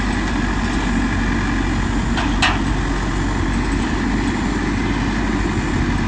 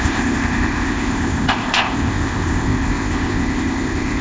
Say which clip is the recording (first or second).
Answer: first